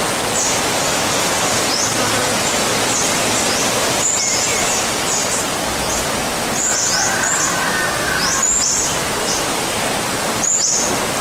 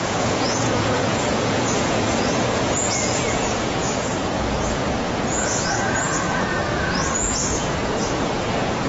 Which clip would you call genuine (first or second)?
first